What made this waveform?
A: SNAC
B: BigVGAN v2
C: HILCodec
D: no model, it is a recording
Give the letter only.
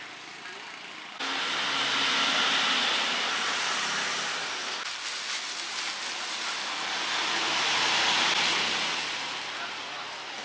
D